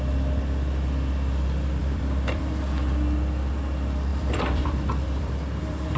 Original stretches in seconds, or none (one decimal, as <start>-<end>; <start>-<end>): 0.0-1.8; 2.4-4.1